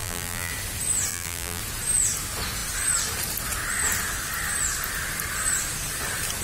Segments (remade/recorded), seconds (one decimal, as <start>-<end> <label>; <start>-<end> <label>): 0.0-0.5 remade; 0.5-1.1 recorded; 1.1-1.6 remade; 1.6-6.4 recorded